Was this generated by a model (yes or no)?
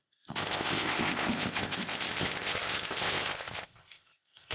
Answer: yes